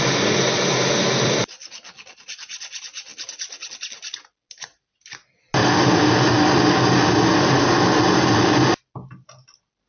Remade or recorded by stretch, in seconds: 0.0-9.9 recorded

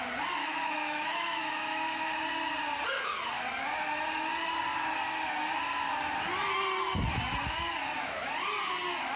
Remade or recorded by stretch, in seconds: 0.0-0.4 recorded; 0.4-2.1 remade; 2.1-9.2 recorded

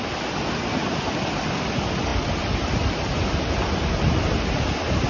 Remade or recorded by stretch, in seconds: 0.0-5.1 recorded

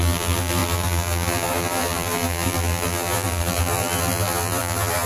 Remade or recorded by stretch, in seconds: 0.0-5.1 remade